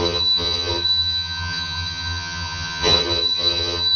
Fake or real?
fake